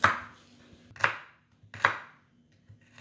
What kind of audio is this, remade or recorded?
recorded